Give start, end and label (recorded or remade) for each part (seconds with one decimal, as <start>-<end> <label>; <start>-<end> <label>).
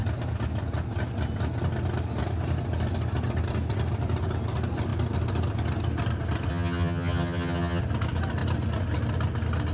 0.0-6.5 recorded; 6.5-7.8 remade; 7.8-9.7 recorded